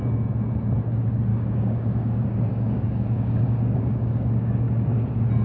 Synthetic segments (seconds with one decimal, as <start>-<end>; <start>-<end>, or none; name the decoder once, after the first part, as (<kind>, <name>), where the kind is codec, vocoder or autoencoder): 1.3-4.5 (codec, DAC)

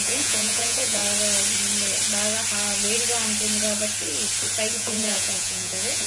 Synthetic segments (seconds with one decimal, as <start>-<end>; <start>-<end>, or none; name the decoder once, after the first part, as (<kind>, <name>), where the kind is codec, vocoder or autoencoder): 0.0-1.0 (vocoder, Vocos); 4.7-6.1

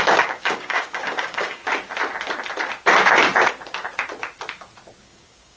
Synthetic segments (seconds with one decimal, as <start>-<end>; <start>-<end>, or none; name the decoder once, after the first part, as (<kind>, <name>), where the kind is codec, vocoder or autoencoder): 0.0-1.6 (codec, DAC); 5.0-5.6

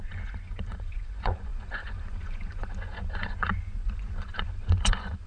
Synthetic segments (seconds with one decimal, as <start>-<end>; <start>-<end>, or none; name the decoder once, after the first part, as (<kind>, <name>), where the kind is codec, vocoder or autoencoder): 0.0-5.3 (vocoder, Vocos)

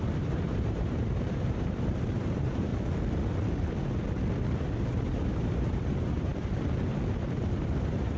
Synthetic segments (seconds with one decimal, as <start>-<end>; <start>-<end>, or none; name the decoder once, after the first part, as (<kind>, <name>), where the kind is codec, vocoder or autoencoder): 0.0-2.7 (vocoder, BigVGAN v2); 4.9-6.3; 7.6-8.2

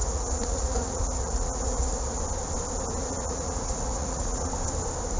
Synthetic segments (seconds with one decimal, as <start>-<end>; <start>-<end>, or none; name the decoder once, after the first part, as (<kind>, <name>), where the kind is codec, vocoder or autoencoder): 0.0-2.2 (vocoder, Vocos); 3.0-4.5

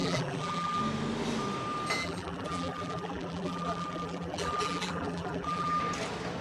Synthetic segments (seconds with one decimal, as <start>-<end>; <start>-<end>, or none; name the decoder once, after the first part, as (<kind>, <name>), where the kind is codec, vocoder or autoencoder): 0.0-0.8 (vocoder, BigVGAN v2); 2.0-5.8

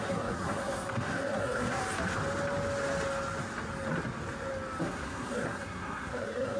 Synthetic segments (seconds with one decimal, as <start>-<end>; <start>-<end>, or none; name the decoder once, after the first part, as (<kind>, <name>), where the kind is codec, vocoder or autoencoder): 0.0-1.8 (codec, SNAC); 4.8-6.6